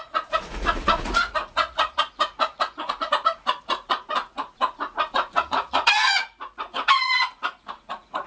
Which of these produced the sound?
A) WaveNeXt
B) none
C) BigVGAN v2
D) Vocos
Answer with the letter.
D